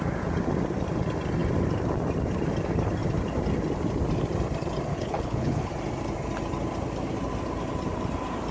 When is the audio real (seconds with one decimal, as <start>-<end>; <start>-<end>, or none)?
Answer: 0.0-4.9; 5.7-8.5